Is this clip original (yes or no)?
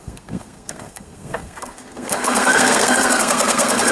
no